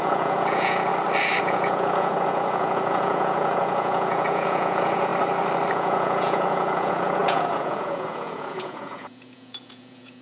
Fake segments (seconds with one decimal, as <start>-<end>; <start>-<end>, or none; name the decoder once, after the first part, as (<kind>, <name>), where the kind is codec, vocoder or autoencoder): 0.0-0.9 (vocoder, Vocos); 1.4-5.1; 5.7-10.2